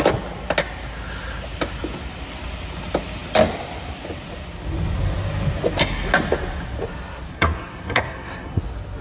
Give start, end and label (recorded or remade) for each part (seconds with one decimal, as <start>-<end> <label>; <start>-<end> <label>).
0.0-7.3 recorded; 7.3-8.6 remade; 8.6-9.0 recorded